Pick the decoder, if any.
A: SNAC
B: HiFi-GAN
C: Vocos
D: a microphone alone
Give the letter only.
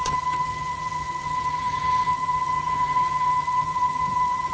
B